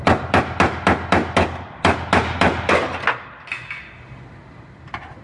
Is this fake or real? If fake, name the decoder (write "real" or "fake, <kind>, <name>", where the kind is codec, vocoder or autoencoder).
real